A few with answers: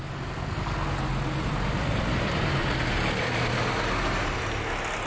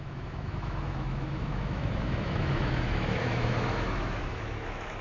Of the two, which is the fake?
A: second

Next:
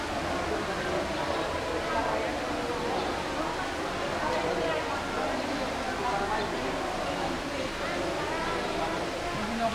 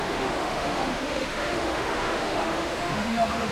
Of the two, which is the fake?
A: second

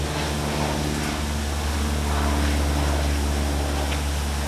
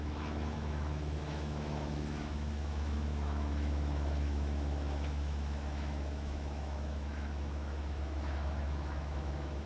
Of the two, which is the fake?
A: second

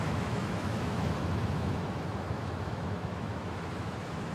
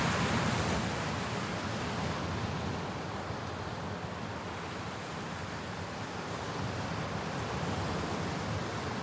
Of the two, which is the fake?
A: first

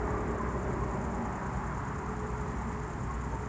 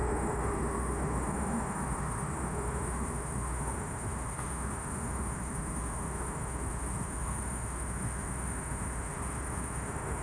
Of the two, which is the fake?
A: second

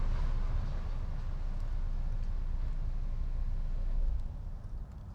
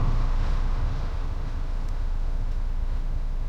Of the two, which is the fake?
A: second